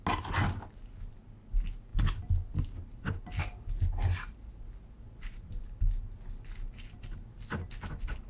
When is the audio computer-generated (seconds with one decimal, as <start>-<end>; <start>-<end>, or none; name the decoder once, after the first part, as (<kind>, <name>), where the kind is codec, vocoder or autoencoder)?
none